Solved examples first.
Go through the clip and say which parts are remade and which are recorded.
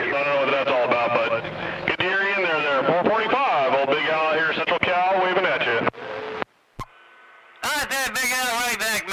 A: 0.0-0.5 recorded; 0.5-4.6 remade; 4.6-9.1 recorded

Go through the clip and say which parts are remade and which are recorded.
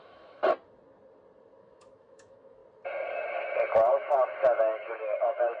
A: 0.0-0.4 remade; 0.4-1.6 recorded; 1.6-2.6 remade; 2.6-4.9 recorded; 4.9-5.6 remade